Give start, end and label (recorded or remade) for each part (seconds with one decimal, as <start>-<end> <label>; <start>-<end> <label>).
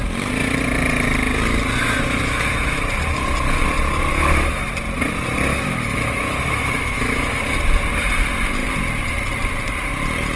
0.0-1.8 recorded; 1.8-2.4 remade; 2.4-4.1 recorded; 4.1-4.7 remade; 4.7-5.5 recorded; 5.5-7.6 remade; 7.6-10.4 recorded